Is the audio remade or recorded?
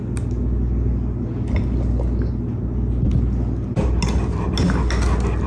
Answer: recorded